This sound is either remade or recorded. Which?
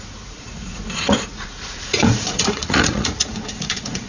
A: remade